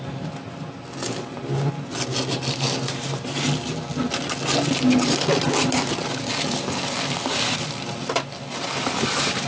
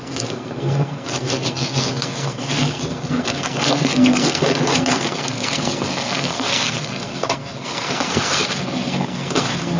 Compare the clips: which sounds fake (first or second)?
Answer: second